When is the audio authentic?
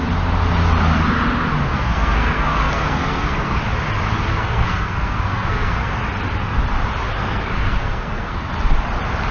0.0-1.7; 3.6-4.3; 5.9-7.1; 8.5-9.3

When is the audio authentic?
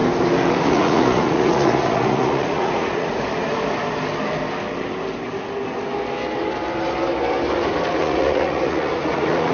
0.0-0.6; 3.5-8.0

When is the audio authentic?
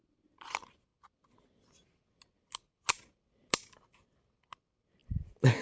0.0-5.6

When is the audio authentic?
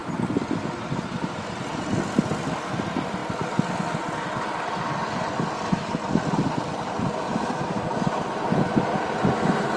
0.0-3.2; 4.3-9.8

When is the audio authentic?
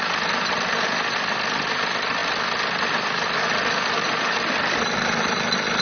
0.0-5.8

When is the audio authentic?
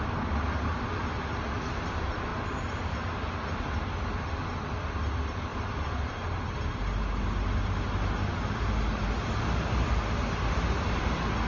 0.0-11.5